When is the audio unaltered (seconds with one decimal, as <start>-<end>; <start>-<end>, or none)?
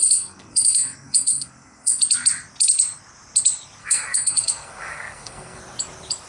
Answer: 2.0-3.8; 5.6-6.3